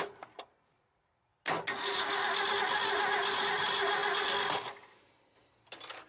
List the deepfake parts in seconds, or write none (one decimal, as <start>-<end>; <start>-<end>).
0.0-1.3; 2.9-4.0; 4.9-6.1